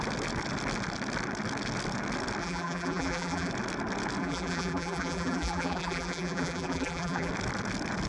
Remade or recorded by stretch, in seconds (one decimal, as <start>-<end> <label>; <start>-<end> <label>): 0.0-2.4 recorded; 2.4-3.5 remade; 3.5-4.2 recorded; 4.2-7.3 remade; 7.3-8.1 recorded